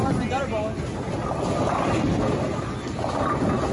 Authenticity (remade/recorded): recorded